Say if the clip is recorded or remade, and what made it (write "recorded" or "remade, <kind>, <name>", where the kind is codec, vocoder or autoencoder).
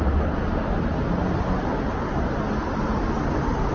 recorded